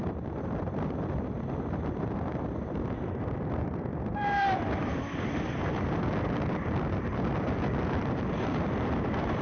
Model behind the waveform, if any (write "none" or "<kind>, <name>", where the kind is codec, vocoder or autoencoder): vocoder, BigVGAN v2